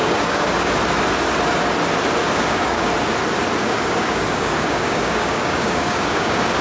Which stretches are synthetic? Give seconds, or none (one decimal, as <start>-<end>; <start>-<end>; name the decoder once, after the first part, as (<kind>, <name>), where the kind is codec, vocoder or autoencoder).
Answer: 0.0-0.7 (codec, DAC); 2.2-2.9; 3.6-6.6